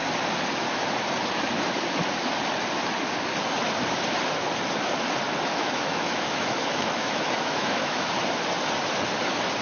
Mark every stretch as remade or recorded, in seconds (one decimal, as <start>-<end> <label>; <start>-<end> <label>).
0.0-5.5 recorded; 5.5-8.1 remade; 8.1-9.6 recorded